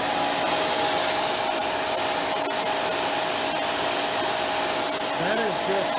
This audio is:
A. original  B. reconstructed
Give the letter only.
A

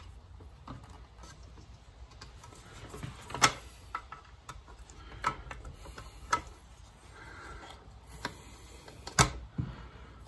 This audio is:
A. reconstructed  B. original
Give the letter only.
B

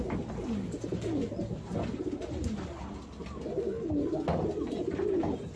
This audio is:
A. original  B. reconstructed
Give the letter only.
A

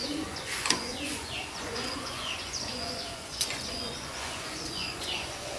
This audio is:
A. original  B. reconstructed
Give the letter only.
B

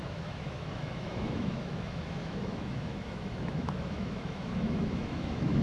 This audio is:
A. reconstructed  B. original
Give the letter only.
A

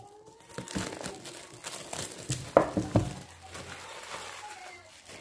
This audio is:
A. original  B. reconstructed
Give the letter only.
A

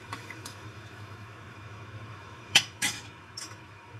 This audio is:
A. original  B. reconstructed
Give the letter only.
B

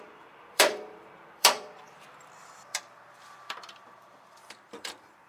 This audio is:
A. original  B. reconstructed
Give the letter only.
B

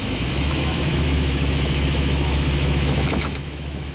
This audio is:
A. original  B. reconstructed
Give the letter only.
B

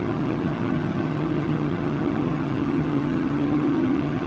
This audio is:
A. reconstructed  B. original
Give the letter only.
A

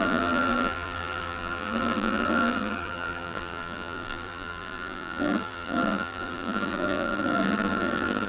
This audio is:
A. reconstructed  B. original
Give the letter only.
A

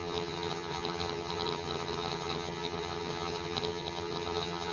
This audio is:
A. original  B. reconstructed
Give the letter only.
B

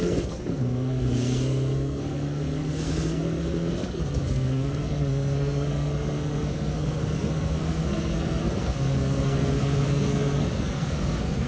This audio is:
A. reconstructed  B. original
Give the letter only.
A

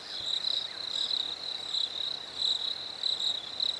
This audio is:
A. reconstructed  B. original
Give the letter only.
B